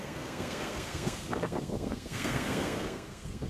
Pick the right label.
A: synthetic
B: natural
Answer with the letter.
A